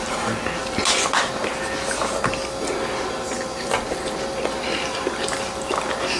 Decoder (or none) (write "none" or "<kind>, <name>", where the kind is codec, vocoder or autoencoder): none